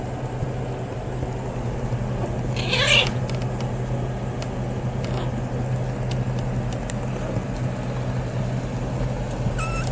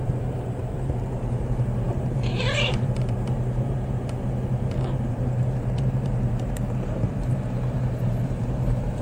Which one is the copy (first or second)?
second